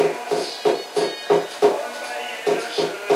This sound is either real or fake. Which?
real